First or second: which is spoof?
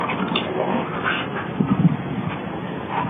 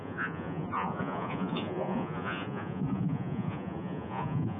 second